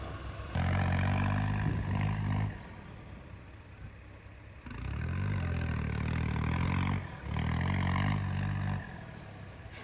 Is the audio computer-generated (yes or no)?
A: no